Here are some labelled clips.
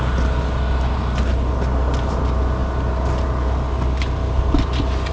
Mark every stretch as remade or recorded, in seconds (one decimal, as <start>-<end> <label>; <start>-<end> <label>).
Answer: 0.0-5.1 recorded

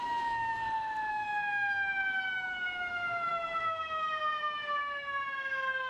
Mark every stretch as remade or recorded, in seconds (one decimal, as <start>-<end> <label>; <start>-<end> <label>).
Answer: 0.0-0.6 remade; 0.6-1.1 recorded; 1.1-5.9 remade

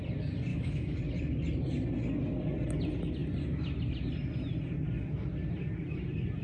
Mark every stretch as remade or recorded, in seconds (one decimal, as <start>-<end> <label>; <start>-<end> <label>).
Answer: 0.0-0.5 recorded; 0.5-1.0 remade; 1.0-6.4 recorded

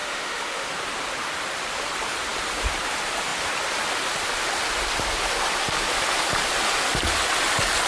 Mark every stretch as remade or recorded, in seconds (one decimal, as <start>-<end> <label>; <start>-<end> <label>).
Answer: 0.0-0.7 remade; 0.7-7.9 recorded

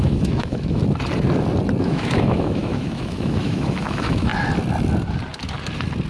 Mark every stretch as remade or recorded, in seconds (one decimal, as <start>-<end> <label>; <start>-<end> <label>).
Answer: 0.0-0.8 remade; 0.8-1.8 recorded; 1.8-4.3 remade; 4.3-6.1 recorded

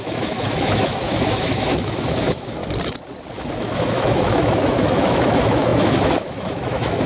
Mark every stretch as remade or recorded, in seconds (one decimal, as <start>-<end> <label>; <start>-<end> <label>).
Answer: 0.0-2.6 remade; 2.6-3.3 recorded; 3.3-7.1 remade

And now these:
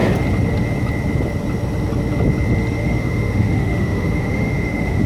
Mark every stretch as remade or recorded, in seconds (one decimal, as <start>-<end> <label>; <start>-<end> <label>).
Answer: 0.0-2.8 recorded; 2.8-5.1 remade

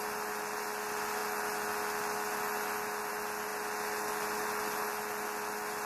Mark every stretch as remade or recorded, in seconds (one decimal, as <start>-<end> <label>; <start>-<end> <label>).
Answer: 0.0-5.9 recorded